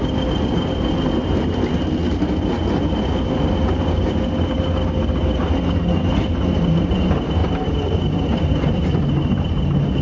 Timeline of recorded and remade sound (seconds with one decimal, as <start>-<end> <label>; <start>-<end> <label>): 0.0-10.0 recorded